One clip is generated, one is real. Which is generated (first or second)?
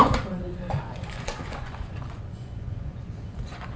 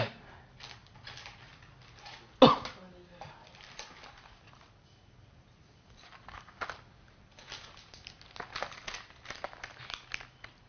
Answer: first